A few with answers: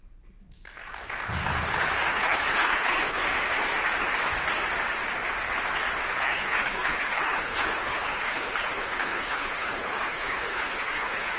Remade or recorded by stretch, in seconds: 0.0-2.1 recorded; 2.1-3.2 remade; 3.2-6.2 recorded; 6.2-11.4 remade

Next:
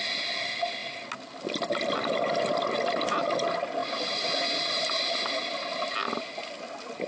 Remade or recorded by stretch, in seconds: 0.0-7.1 recorded